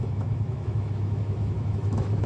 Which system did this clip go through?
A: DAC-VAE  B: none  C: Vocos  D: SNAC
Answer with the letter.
A